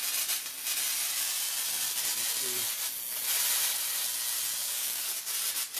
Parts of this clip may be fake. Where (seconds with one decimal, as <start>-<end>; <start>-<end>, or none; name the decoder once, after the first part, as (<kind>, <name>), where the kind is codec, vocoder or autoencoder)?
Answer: 4.6-5.3 (codec, DAC)